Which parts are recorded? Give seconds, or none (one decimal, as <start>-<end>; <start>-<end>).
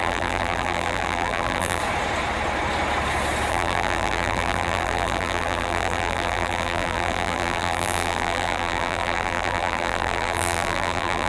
1.8-3.5